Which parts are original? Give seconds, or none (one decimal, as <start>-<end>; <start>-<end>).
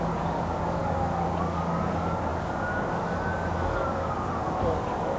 none